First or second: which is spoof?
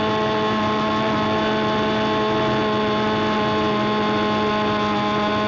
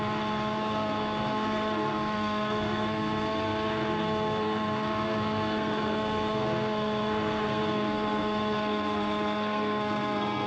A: second